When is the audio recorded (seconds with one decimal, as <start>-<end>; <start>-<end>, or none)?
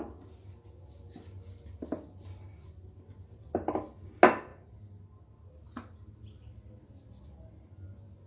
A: 0.0-8.3